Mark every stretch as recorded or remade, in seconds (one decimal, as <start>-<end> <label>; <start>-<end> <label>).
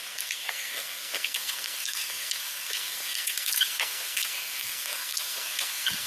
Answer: 0.0-6.1 remade